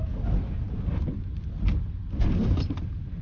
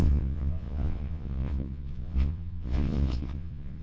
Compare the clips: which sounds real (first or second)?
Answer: first